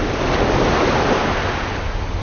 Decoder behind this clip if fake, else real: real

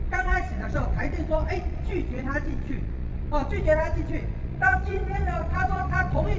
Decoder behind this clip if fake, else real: fake, vocoder, Vocos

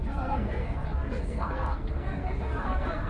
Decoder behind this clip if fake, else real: fake, codec, SNAC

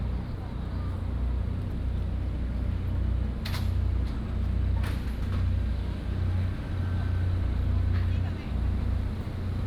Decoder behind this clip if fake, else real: real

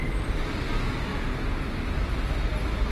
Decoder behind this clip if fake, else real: real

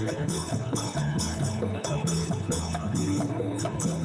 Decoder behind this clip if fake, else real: fake, codec, HILCodec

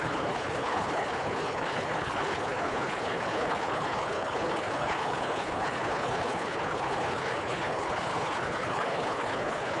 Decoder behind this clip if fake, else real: fake, codec, HILCodec